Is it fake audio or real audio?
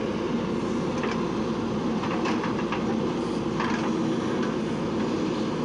real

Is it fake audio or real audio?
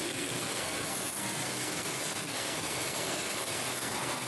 fake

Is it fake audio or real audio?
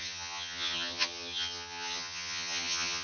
fake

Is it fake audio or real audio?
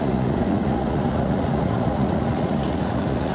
fake